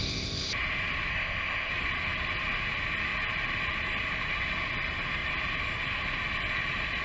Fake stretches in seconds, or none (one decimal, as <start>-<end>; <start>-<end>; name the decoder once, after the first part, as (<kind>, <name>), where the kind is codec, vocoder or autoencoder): 0.0-0.5 (codec, ZipCodec); 1.1-1.7